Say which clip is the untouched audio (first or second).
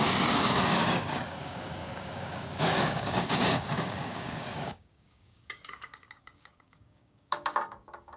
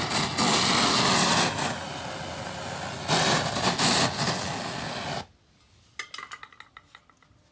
second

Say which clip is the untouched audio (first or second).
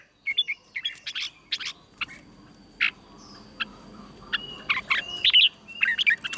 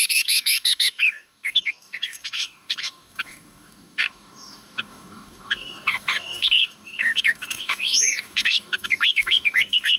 first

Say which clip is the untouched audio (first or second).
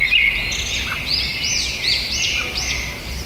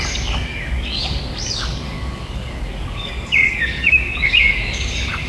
first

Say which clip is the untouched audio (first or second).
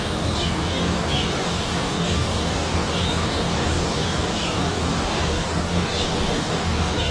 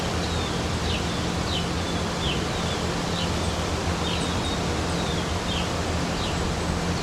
second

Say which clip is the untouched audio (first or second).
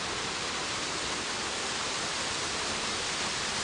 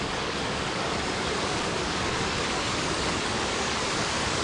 first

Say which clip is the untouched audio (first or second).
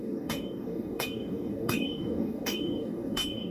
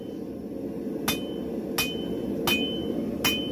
second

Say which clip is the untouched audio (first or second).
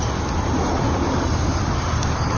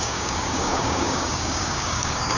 first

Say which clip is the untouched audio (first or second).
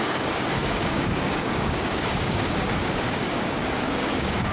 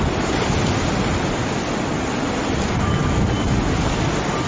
second